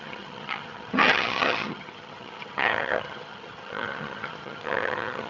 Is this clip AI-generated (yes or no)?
yes